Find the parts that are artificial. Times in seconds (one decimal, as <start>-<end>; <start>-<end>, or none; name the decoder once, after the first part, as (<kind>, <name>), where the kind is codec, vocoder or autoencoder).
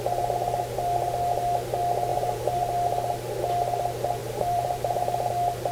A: 2.1-2.6 (vocoder, BigVGAN v2); 4.2-5.3